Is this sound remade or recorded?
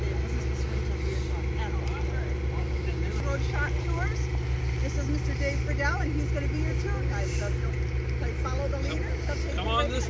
recorded